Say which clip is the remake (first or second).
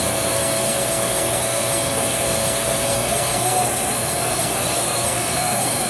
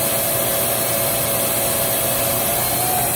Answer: first